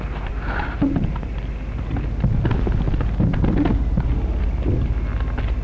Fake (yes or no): no